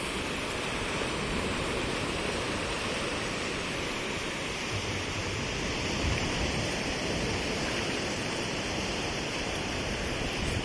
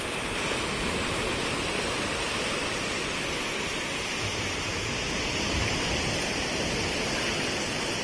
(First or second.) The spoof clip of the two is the first